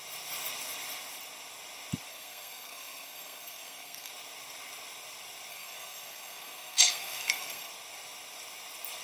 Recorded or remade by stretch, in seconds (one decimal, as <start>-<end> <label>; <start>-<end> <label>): 0.0-2.1 recorded; 2.1-4.1 remade; 4.1-5.5 recorded; 5.5-7.7 remade; 7.7-9.0 recorded